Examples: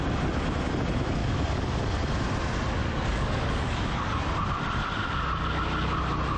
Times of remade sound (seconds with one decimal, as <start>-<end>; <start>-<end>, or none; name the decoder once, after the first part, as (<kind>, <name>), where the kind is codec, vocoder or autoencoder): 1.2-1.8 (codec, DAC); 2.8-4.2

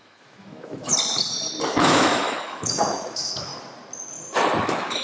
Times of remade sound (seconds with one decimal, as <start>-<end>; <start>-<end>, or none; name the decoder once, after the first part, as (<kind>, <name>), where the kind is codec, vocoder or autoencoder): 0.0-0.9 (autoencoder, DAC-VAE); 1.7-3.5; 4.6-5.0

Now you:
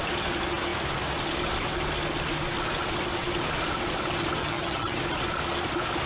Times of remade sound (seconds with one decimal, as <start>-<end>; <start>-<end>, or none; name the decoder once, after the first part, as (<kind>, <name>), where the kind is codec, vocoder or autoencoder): 4.4-5.0 (vocoder, HiFi-GAN)

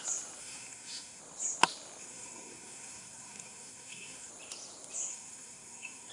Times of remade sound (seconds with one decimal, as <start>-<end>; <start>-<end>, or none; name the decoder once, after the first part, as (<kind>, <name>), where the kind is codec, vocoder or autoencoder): 0.4-1.2 (codec, SNAC); 2.0-4.3; 5.1-6.1